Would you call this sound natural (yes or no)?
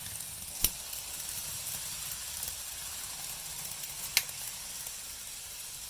yes